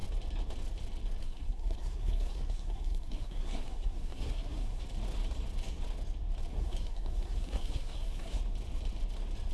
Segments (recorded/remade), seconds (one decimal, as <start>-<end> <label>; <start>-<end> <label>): 0.0-1.2 recorded; 1.2-4.8 remade; 4.8-6.5 recorded; 6.5-8.4 remade; 8.4-9.5 recorded